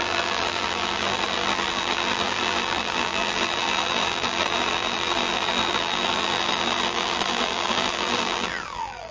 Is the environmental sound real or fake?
fake